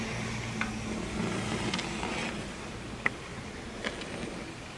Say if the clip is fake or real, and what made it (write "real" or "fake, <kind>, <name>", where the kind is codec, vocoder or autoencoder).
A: real